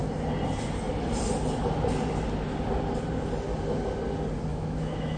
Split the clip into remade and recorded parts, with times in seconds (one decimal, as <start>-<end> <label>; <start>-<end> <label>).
0.0-4.5 recorded; 4.5-5.2 remade